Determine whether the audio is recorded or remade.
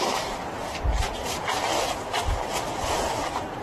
recorded